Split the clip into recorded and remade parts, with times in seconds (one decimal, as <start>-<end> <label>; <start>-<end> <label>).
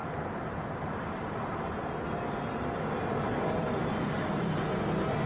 0.0-1.2 remade; 1.2-3.9 recorded; 3.9-4.5 remade; 4.5-5.3 recorded